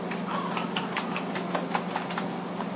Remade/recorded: recorded